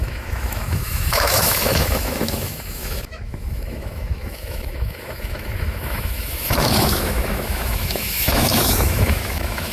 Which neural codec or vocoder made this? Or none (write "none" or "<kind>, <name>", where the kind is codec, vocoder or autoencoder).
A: autoencoder, DAC-VAE